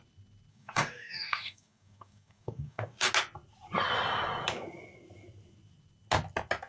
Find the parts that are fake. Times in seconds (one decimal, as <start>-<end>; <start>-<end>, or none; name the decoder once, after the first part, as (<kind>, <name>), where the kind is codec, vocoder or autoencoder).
0.5-3.1 (codec, DAC)